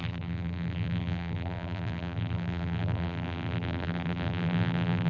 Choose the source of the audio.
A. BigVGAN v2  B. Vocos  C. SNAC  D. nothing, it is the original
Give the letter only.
A